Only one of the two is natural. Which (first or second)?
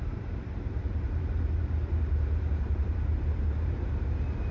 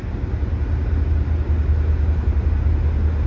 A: second